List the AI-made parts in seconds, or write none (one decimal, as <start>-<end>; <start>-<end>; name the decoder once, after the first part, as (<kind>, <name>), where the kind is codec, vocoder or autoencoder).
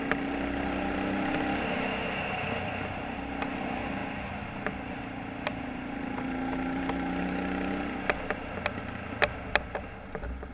none